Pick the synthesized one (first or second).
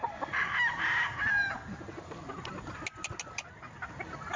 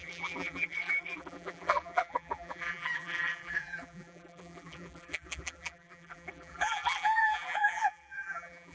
second